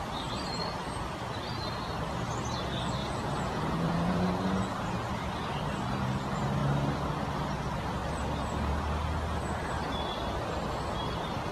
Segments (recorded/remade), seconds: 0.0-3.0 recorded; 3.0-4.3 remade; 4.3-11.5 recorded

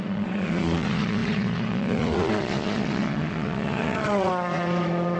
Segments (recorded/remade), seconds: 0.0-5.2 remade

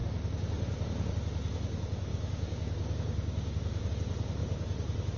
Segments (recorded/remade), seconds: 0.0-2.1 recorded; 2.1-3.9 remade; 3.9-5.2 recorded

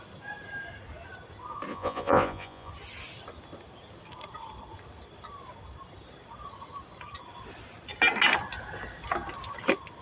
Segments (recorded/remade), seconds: 0.0-1.7 recorded; 1.7-2.7 remade; 2.7-10.0 recorded

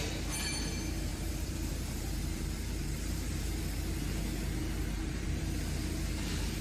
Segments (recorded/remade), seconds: 0.0-1.1 recorded; 1.1-3.6 remade; 3.6-5.0 recorded; 5.0-5.5 remade; 5.5-6.6 recorded

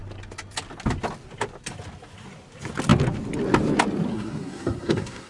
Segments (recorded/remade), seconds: 0.0-4.1 recorded; 4.1-5.3 remade

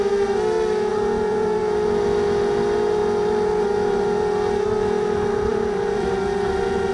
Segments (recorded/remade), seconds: 0.0-0.9 recorded; 0.9-1.6 remade; 1.6-5.5 recorded; 5.5-6.2 remade; 6.2-6.9 recorded

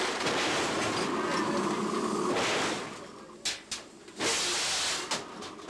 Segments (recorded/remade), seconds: 0.0-5.7 recorded